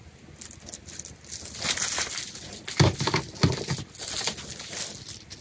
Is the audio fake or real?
real